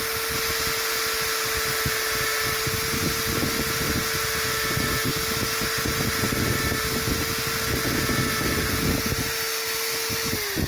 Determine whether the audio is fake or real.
real